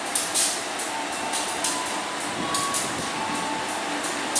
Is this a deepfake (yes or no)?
no